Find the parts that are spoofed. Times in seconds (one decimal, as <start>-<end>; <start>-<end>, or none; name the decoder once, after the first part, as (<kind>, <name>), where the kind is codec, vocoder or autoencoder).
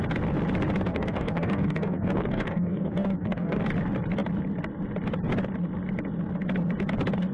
0.9-3.6 (codec, DAC)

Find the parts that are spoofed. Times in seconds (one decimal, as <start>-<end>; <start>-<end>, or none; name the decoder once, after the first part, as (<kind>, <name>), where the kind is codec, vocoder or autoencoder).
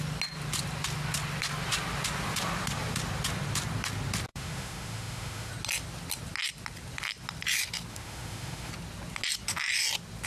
4.3-5.5 (autoencoder, DAC-VAE); 7.9-8.7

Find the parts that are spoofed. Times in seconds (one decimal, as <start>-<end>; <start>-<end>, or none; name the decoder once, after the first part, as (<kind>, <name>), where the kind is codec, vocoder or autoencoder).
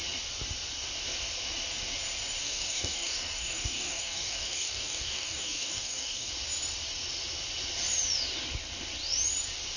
2.4-6.3 (codec, DAC)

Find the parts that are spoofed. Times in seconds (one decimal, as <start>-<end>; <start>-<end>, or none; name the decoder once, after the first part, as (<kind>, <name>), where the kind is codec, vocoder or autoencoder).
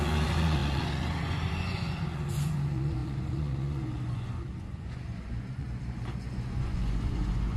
0.0-7.6 (vocoder, Vocos)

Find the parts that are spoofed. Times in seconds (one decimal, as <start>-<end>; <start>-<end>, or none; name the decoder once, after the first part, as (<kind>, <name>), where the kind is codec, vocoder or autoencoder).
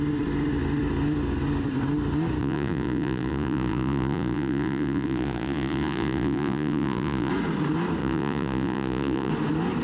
2.4-7.3 (vocoder, Vocos); 8.0-9.3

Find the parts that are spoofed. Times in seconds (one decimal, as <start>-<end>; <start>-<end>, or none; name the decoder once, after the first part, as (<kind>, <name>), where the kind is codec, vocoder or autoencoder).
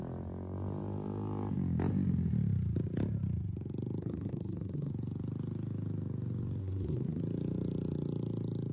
4.0-4.9 (codec, SNAC); 6.6-7.2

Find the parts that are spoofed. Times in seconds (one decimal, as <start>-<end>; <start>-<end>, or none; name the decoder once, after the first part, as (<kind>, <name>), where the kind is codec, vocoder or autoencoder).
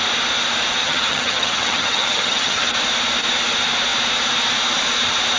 0.8-2.7 (vocoder, HiFi-GAN)